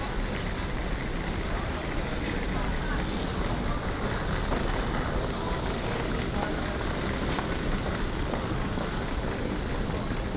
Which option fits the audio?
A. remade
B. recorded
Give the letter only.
B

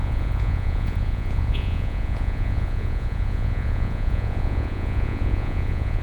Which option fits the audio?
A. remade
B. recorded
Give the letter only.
A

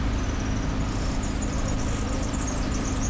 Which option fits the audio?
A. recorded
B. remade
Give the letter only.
A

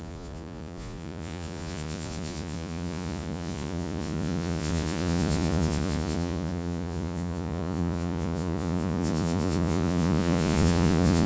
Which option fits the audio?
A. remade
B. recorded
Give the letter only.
A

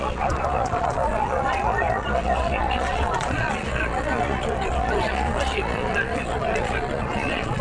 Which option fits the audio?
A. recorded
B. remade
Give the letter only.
B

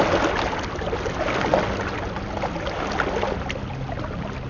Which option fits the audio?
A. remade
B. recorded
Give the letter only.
B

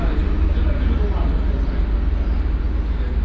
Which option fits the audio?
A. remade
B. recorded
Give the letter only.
B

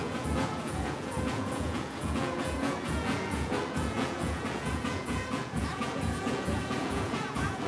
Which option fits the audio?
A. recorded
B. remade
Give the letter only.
B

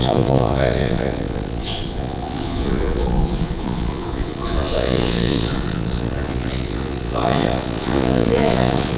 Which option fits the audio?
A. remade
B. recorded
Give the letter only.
A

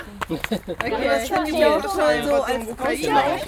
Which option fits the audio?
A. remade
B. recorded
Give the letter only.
B